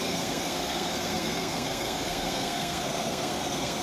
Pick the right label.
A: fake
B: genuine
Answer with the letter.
A